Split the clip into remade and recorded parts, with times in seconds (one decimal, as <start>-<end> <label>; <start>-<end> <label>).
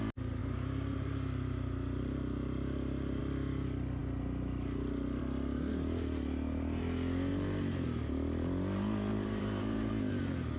0.0-0.4 recorded; 0.4-3.2 remade; 3.2-9.1 recorded; 9.1-9.9 remade; 9.9-10.6 recorded